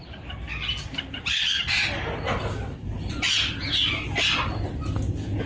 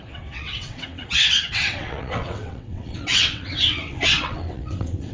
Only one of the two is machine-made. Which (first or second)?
second